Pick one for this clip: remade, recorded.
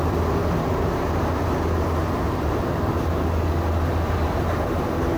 recorded